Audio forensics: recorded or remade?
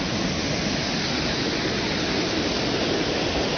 recorded